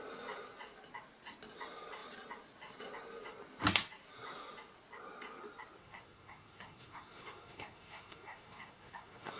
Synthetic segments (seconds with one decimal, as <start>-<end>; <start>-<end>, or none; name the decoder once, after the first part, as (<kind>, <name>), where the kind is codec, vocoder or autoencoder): 5.8-9.4 (codec, SNAC)

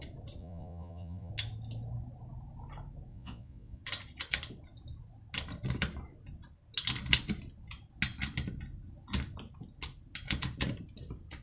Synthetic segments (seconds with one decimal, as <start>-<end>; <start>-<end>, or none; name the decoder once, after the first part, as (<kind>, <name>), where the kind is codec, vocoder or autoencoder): 0.4-1.3 (vocoder, Vocos); 3.1-3.8